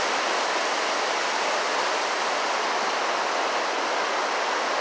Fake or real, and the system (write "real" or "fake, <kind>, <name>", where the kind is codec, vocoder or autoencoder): real